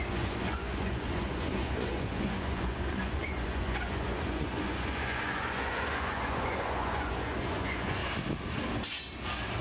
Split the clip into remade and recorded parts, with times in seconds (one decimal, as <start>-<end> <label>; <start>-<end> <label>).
0.0-8.0 remade; 8.0-9.6 recorded